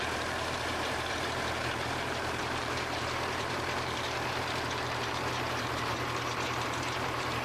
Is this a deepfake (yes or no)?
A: yes